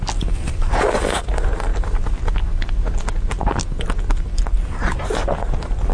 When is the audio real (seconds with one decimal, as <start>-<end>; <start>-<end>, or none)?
0.0-5.9